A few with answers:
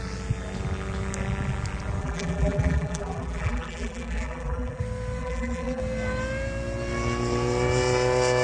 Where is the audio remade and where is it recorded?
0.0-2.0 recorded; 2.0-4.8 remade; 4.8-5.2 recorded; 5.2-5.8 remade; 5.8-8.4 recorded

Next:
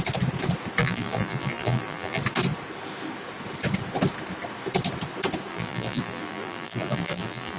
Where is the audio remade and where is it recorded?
0.0-0.8 recorded; 0.8-2.2 remade; 2.2-5.5 recorded; 5.5-7.6 remade

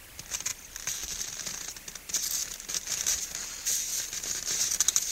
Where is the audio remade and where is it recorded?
0.0-2.4 recorded; 2.4-3.2 remade; 3.2-5.1 recorded